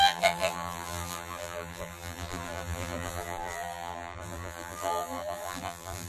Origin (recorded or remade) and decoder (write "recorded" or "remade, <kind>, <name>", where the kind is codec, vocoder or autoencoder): remade, vocoder, BigVGAN v2